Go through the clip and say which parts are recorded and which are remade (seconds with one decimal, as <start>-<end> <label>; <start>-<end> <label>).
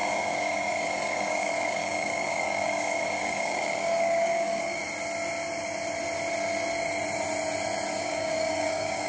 0.0-4.8 remade; 4.8-7.9 recorded; 7.9-9.1 remade